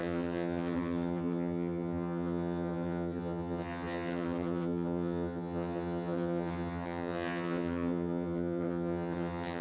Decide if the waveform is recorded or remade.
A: remade